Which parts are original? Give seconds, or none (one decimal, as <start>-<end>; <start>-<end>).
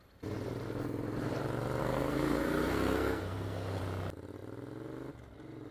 0.0-1.8; 3.8-5.7